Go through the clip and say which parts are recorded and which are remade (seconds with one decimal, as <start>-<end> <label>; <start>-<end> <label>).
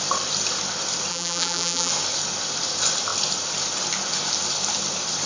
0.0-1.1 recorded; 1.1-1.9 remade; 1.9-5.3 recorded